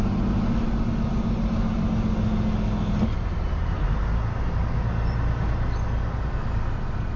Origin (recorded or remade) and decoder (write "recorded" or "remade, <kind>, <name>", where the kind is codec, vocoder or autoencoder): recorded